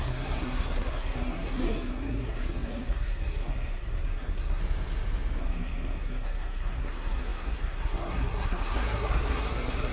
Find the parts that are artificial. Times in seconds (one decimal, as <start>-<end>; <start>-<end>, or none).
0.0-4.6; 5.4-9.9

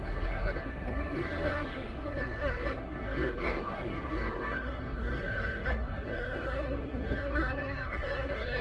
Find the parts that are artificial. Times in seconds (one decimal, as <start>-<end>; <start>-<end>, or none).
0.0-8.6

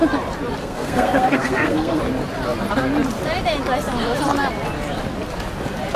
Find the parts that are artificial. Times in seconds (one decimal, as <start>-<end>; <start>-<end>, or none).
0.6-2.0